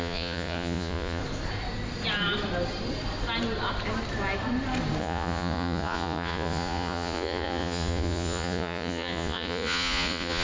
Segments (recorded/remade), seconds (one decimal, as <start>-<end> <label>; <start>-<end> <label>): 0.0-1.2 remade; 1.2-5.0 recorded; 5.0-10.4 remade